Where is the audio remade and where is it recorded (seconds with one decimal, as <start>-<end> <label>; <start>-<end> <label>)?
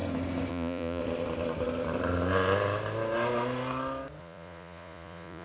0.0-0.5 recorded; 0.5-1.0 remade; 1.0-4.2 recorded; 4.2-5.4 remade